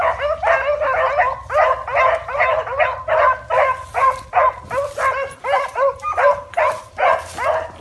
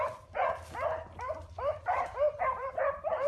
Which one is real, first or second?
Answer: first